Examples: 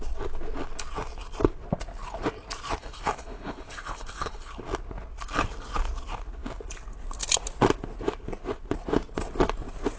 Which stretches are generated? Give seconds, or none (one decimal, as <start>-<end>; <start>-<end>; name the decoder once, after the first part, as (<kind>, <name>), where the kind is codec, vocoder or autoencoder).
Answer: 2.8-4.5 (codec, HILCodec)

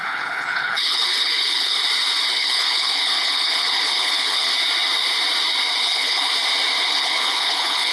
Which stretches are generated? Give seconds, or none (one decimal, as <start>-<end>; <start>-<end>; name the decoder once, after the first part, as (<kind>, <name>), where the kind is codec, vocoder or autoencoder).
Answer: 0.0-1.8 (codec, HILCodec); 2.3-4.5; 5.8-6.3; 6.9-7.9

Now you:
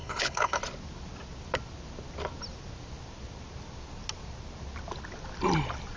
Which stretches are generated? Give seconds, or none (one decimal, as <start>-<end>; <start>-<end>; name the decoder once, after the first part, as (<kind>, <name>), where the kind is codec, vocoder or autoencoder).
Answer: 0.0-0.6 (codec, HILCodec)

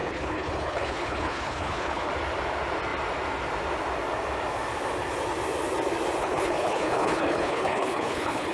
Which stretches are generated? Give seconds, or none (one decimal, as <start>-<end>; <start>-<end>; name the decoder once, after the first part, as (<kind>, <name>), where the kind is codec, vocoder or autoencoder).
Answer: 0.0-2.1 (codec, HILCodec); 6.2-8.5

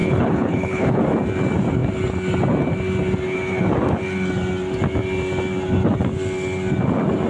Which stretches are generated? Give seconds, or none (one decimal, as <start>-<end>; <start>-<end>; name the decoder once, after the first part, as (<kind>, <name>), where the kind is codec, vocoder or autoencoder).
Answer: 0.0-1.0 (codec, HILCodec)

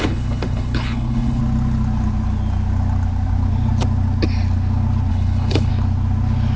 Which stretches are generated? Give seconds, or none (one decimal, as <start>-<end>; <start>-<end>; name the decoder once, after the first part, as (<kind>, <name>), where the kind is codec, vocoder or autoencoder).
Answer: 0.0-1.4 (codec, HILCodec); 5.1-5.7

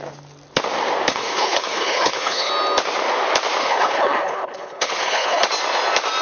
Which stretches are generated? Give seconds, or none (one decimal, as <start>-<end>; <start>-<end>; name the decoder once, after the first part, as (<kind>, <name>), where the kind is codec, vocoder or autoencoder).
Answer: 1.1-2.5 (codec, HILCodec); 3.6-5.4